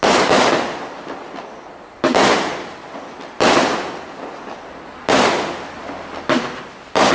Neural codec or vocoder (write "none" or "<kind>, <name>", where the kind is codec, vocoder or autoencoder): none